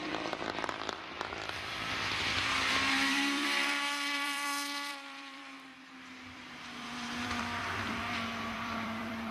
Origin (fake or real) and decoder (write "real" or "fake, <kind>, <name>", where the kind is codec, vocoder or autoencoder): fake, vocoder, BigVGAN v2